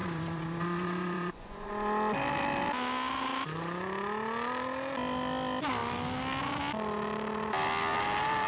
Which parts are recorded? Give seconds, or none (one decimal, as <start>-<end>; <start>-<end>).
1.7-8.5